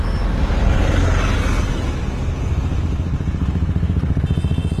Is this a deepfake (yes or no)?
no